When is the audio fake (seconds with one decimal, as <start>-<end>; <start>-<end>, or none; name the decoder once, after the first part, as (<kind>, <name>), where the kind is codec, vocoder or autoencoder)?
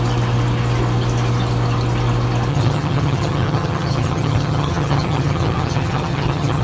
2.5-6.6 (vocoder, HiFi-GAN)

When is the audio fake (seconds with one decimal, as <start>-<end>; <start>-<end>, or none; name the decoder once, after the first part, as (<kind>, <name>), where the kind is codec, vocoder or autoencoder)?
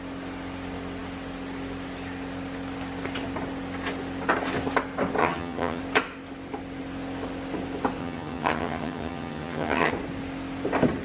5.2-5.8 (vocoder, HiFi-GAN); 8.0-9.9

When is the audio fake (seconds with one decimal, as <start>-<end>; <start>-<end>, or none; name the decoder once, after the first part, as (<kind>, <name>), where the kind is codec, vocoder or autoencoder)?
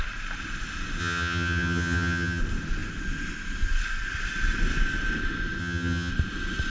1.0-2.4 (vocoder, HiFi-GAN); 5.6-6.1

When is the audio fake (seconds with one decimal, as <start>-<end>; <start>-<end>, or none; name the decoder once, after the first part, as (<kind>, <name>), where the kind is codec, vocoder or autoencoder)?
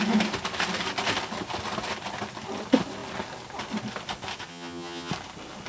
4.5-5.1 (vocoder, HiFi-GAN)